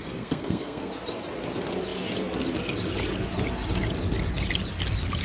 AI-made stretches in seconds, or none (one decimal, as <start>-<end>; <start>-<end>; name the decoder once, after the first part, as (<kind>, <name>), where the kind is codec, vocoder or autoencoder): 0.0-0.9 (codec, SNAC)